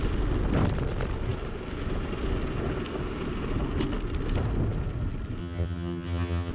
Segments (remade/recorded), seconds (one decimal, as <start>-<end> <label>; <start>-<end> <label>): 0.0-5.4 recorded; 5.4-6.5 remade